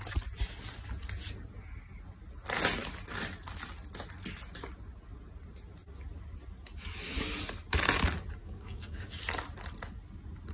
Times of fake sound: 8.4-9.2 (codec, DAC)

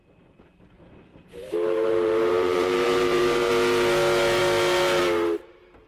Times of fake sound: 1.1-3.5 (vocoder, BigVGAN v2)

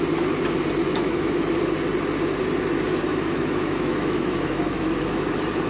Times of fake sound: 0.8-1.4 (autoencoder, DAC-VAE); 3.1-5.3

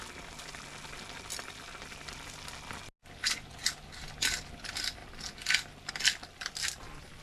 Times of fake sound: none